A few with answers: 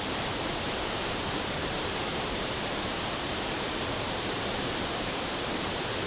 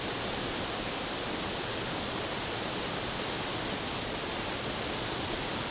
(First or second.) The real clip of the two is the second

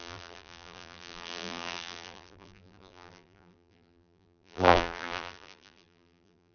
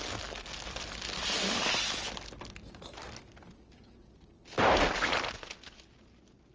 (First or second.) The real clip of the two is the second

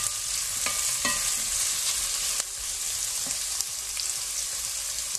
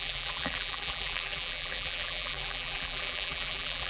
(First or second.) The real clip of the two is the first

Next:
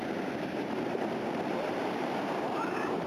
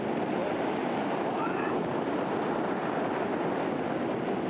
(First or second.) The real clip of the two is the second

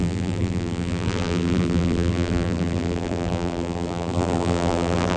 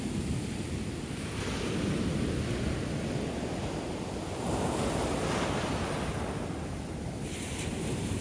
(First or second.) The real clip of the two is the second